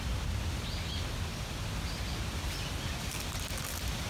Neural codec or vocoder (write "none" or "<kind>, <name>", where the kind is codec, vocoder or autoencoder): none